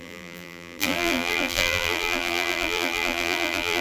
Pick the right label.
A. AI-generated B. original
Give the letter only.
A